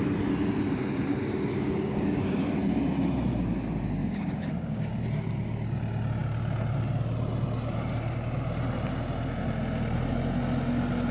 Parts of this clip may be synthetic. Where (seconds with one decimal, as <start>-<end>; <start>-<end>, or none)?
1.5-2.4; 4.0-4.9